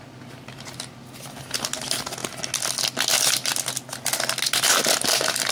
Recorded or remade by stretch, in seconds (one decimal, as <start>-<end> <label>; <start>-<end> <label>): 0.0-5.5 recorded